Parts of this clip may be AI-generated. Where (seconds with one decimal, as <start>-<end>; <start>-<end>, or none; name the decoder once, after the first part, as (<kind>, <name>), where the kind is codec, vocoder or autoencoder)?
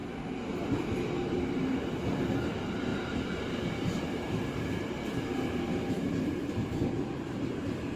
2.9-6.5 (vocoder, BigVGAN v2)